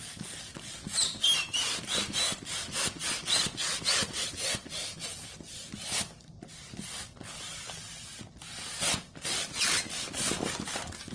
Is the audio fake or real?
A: real